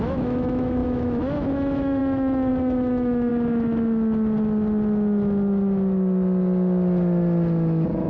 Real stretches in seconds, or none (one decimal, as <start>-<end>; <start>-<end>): 3.3-8.1